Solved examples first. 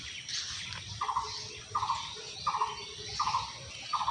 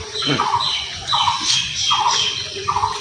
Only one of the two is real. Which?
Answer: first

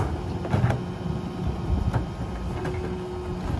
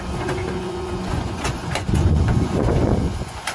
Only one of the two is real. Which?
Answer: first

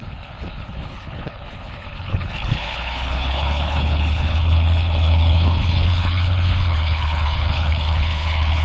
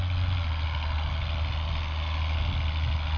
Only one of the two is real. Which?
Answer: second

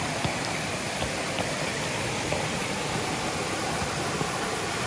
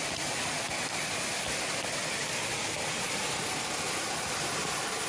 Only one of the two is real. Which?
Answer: second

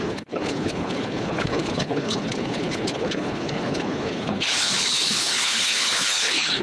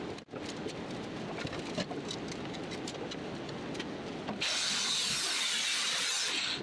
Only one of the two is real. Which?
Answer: second